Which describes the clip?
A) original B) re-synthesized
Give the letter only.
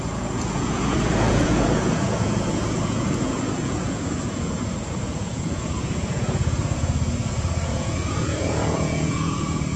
B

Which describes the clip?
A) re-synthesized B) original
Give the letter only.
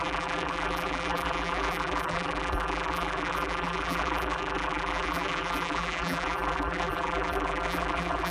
A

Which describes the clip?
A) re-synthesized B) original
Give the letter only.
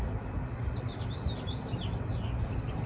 B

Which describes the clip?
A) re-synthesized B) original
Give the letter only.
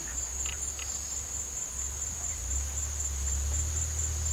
B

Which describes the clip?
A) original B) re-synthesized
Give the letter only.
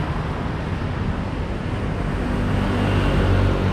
A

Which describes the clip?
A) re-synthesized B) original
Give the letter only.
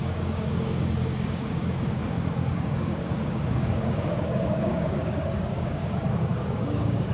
A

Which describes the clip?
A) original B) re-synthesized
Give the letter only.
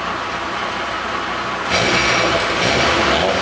A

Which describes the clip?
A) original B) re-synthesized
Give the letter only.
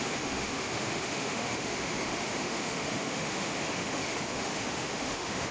B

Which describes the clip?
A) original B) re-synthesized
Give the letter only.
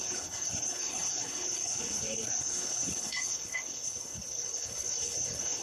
B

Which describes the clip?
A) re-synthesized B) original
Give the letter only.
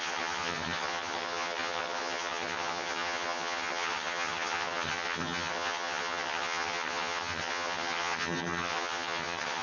A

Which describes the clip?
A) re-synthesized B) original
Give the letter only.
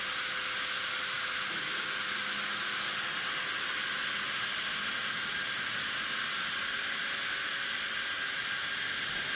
B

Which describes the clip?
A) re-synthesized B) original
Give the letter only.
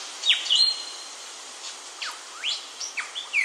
A